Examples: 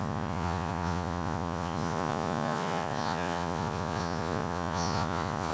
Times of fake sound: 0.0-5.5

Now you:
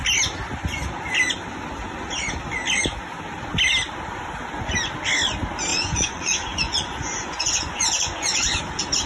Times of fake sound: 5.7-8.6

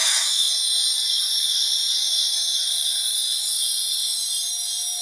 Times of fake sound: 0.0-0.5

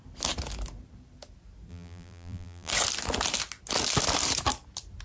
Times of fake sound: 1.7-2.7

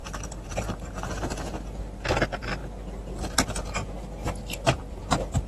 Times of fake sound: 0.0-1.3

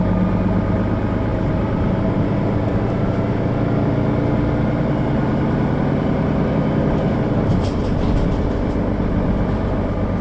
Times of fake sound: none